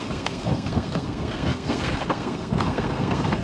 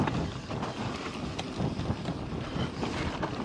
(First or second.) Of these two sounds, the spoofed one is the first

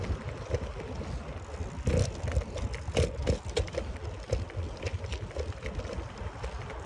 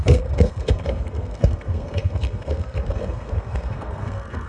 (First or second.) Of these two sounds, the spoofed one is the second